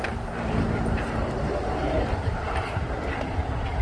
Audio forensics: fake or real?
fake